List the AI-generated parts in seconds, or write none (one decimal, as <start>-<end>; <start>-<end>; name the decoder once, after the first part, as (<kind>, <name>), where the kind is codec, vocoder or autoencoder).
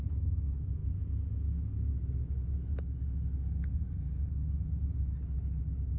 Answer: none